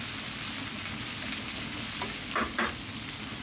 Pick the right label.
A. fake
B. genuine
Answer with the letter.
B